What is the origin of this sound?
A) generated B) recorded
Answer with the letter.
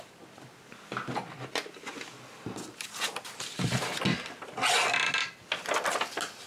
B